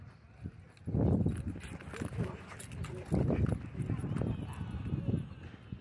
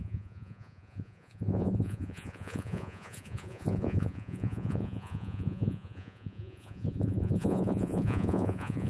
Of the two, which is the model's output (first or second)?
second